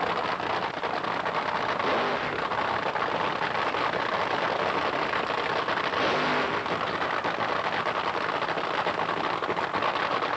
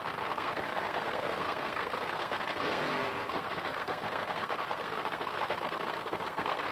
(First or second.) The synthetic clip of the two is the second